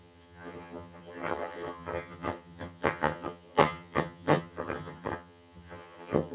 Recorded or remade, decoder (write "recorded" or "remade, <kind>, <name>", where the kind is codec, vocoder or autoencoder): remade, vocoder, HiFi-GAN